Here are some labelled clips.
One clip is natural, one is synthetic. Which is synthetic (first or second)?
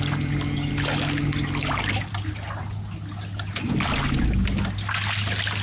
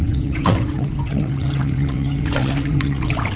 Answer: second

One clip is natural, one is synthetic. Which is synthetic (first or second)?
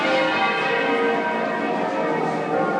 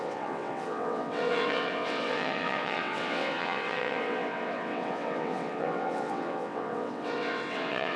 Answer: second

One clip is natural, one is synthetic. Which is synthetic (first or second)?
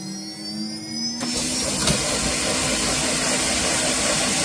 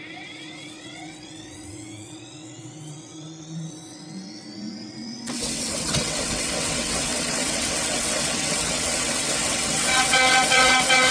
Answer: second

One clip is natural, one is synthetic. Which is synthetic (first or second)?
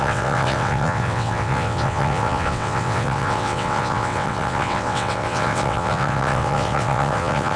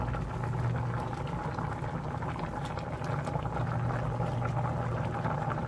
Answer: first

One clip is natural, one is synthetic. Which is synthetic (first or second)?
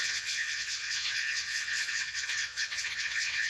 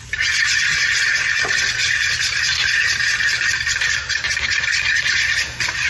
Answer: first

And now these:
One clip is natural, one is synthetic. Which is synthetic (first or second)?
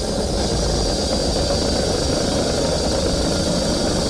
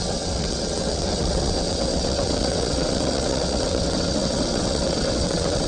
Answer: second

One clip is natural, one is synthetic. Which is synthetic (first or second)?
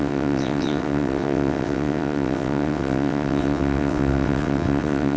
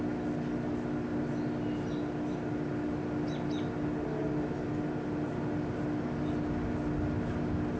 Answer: first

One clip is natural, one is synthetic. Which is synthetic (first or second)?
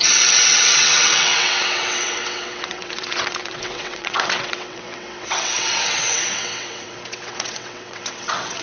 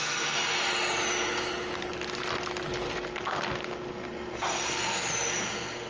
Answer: first